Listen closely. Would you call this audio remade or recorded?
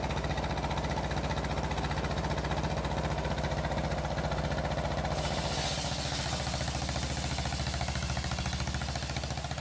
recorded